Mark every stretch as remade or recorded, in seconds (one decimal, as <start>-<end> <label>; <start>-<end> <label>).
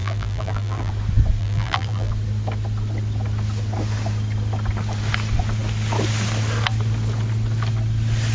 0.0-0.9 remade; 0.9-1.4 recorded; 1.4-2.1 remade; 2.1-8.3 recorded